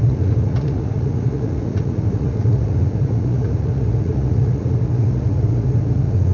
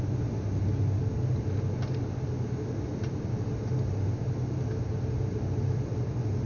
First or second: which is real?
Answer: second